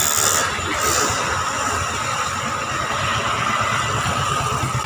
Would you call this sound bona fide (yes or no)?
yes